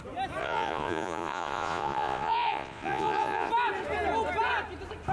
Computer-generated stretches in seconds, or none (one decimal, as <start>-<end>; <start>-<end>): 0.4-3.5